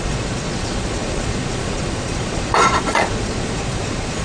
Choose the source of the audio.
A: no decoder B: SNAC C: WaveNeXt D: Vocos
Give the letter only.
D